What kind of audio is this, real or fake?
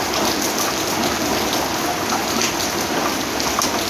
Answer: real